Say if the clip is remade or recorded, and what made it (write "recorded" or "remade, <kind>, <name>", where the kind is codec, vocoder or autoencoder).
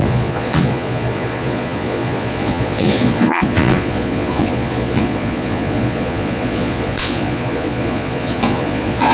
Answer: remade, vocoder, Vocos